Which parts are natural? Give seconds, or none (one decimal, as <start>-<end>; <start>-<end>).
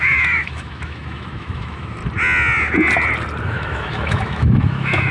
2.0-3.4